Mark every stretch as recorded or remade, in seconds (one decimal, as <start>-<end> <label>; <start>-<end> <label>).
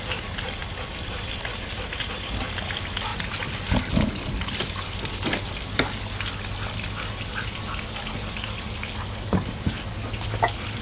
0.0-10.8 recorded